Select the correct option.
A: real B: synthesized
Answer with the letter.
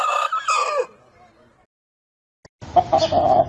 A